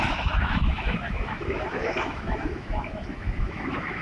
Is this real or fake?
fake